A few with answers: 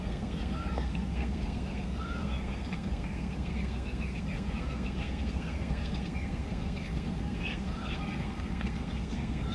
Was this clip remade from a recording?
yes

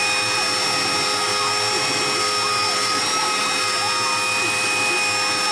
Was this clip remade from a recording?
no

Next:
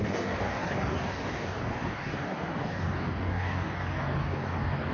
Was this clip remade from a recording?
yes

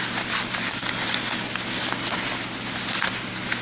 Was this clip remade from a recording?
no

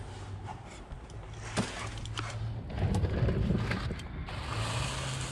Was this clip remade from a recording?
no